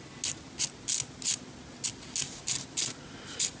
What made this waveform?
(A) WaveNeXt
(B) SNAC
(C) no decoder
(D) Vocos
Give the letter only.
C